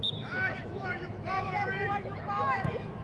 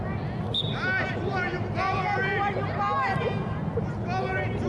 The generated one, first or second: first